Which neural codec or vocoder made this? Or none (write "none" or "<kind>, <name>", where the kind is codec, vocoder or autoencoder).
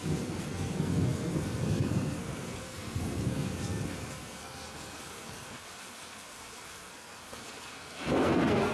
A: codec, SNAC